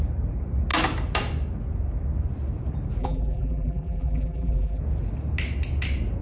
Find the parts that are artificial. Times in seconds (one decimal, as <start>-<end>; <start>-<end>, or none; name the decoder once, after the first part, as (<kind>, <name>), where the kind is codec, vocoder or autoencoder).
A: 3.0-4.8 (vocoder, BigVGAN v2)